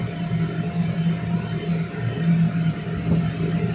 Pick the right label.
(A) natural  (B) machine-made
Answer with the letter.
A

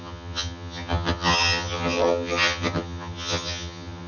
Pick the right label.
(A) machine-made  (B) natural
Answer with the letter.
A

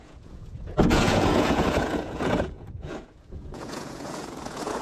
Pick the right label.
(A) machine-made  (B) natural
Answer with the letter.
A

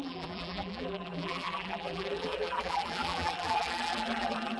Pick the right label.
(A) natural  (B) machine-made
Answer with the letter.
B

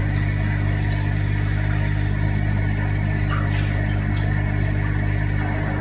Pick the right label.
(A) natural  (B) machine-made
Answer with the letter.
A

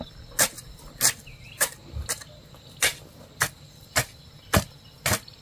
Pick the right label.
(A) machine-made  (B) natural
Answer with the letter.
B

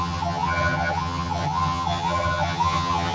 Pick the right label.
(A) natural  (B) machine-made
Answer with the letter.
B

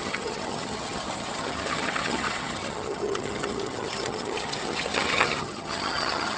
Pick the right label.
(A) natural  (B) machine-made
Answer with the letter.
B